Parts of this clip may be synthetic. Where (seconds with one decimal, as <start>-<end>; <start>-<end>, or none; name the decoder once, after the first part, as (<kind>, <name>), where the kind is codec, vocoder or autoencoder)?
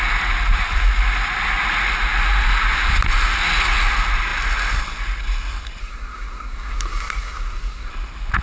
5.8-7.9 (codec, SNAC)